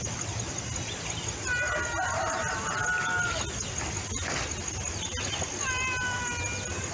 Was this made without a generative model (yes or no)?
yes